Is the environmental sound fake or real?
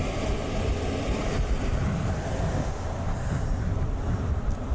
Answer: real